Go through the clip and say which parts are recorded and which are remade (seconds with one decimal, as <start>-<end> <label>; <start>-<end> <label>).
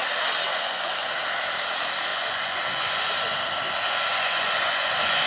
0.0-0.5 recorded; 0.5-1.1 remade; 1.1-2.1 recorded; 2.1-3.1 remade; 3.1-4.1 recorded; 4.1-5.3 remade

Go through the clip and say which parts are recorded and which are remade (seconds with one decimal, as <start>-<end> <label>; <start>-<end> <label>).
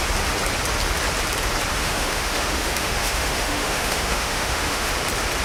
0.0-1.7 recorded; 1.7-4.9 remade; 4.9-5.4 recorded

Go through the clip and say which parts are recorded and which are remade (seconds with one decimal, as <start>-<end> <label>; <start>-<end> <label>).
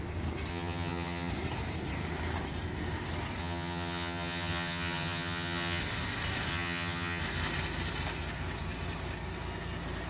0.0-0.5 recorded; 0.5-1.3 remade; 1.3-3.4 recorded; 3.4-5.8 remade; 5.8-6.5 recorded; 6.5-7.2 remade; 7.2-10.1 recorded